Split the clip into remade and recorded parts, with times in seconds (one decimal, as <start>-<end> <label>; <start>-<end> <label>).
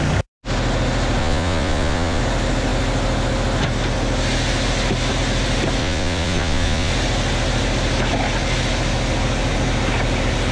0.0-1.2 recorded; 1.2-2.2 remade; 2.2-5.8 recorded; 5.8-6.9 remade; 6.9-10.5 recorded